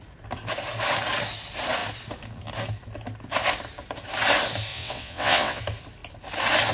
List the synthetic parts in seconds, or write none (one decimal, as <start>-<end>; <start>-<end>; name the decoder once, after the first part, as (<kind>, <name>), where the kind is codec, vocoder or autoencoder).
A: 4.7-5.6 (vocoder, WaveNeXt)